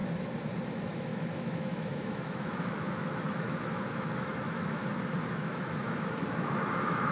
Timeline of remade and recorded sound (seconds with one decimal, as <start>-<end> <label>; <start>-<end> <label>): 0.0-0.7 recorded; 0.7-4.8 remade; 4.8-5.3 recorded; 5.3-7.1 remade